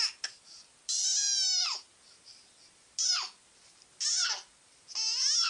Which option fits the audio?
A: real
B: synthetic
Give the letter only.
A